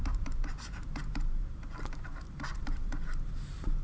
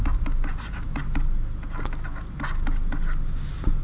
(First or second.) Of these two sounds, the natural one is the second